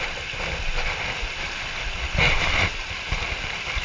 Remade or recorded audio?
recorded